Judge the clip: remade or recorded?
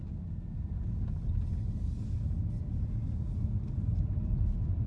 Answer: recorded